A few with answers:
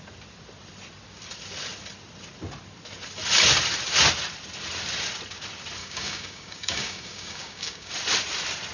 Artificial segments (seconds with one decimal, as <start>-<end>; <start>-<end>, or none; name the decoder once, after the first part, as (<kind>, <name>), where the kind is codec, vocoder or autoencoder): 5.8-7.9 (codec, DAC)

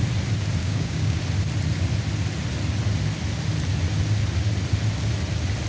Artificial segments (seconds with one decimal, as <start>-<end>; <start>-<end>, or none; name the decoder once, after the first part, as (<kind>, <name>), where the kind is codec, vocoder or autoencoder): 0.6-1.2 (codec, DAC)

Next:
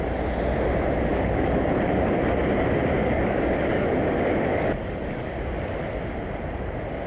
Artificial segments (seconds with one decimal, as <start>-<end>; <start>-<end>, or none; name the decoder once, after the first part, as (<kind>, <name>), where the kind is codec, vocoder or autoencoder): 1.1-2.4 (codec, DAC); 3.0-4.0; 4.5-5.4

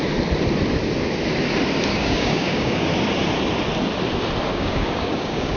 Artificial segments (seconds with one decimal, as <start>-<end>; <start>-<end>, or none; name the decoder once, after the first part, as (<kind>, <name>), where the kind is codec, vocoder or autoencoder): 1.9-2.9 (codec, DAC); 4.5-5.6

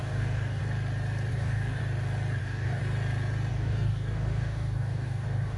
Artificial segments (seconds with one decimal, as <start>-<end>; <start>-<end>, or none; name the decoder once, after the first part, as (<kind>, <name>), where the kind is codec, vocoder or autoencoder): 0.0-0.6 (codec, DAC); 1.3-1.8; 2.4-2.8; 3.5-5.6